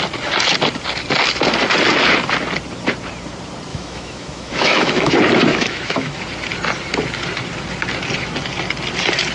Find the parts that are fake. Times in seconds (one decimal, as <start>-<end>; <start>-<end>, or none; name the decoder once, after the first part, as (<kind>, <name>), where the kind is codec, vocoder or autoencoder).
3.7-5.1 (autoencoder, DAC-VAE); 5.5-6.2